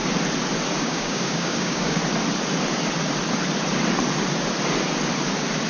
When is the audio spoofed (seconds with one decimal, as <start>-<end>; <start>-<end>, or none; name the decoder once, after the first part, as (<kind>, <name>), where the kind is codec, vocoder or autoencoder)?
0.8-2.0 (codec, DAC)